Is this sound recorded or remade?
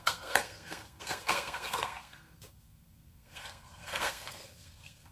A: remade